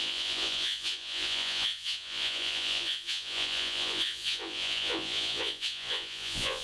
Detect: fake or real fake